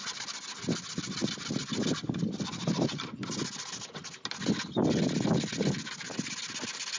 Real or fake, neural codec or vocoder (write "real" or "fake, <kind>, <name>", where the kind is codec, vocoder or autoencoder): real